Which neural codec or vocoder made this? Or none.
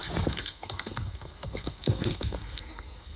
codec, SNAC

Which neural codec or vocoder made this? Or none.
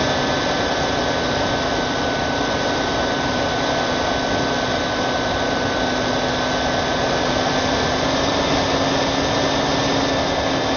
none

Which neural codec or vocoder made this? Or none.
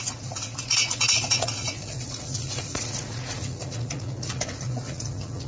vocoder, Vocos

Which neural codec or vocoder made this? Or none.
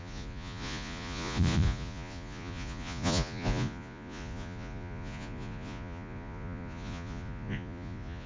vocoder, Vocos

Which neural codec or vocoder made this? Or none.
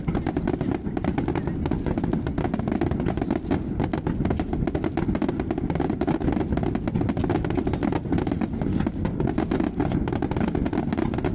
none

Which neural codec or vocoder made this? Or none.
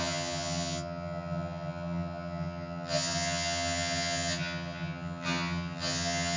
vocoder, HiFi-GAN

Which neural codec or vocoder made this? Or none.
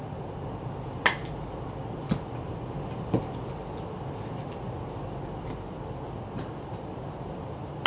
none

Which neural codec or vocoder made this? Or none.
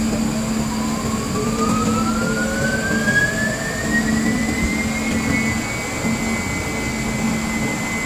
none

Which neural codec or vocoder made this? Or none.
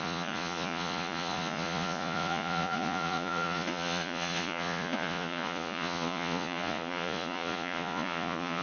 vocoder, Vocos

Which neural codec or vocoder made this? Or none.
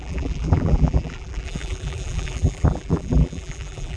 vocoder, BigVGAN v2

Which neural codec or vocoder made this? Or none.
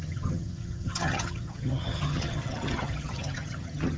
vocoder, HiFi-GAN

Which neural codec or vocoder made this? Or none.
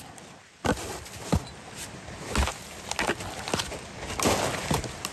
none